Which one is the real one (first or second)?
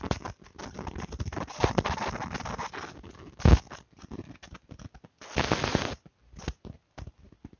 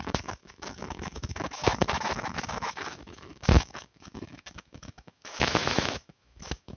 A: first